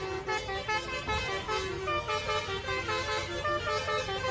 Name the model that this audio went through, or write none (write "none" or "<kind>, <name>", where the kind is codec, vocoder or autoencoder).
none